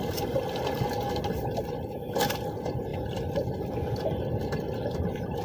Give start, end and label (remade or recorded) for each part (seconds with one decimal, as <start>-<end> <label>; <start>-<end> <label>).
0.0-1.4 recorded; 1.4-2.9 remade; 2.9-3.7 recorded; 3.7-5.4 remade